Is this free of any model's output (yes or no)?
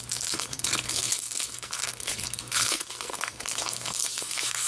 no